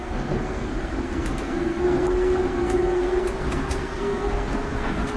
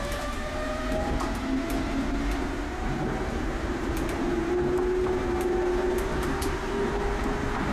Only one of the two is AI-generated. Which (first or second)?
first